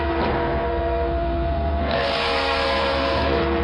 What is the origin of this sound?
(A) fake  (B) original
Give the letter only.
A